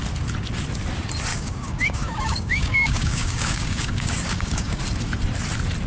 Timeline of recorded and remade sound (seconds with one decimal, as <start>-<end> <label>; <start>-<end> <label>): 0.0-1.3 recorded; 1.3-4.8 remade; 4.8-5.9 recorded

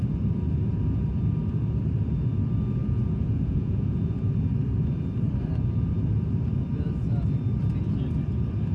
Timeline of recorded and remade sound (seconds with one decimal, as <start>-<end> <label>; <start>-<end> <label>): 0.0-2.8 recorded; 2.8-4.0 remade; 4.0-8.7 recorded